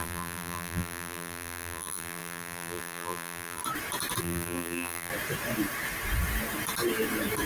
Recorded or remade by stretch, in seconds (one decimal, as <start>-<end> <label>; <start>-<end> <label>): 0.0-3.6 remade; 3.6-4.2 recorded; 4.2-5.1 remade; 5.1-7.5 recorded